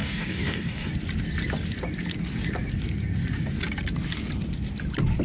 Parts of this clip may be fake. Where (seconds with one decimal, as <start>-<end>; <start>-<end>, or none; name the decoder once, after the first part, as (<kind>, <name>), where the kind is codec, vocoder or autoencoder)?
0.0-0.9 (codec, DAC)